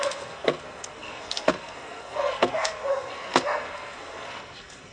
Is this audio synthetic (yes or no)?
yes